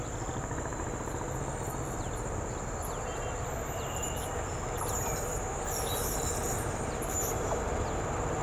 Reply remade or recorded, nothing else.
recorded